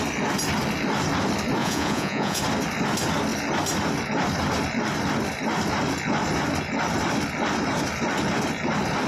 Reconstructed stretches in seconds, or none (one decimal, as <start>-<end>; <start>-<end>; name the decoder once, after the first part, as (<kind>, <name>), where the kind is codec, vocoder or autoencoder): 1.6-2.4 (vocoder, Vocos)